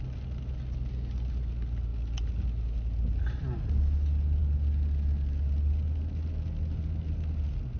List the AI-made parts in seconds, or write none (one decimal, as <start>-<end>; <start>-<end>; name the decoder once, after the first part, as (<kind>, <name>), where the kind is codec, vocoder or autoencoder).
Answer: none